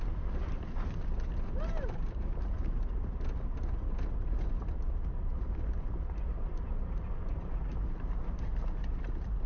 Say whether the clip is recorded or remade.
recorded